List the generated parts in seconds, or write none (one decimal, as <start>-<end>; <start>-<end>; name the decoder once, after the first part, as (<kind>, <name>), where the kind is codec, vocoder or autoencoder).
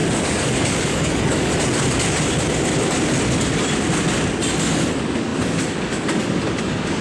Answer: 0.0-1.5 (codec, DAC); 4.6-7.0